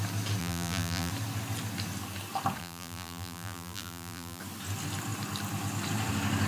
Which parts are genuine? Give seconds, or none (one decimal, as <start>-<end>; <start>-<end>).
0.0-0.4; 1.1-2.6; 4.4-6.5